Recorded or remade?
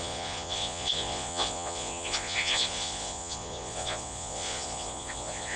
remade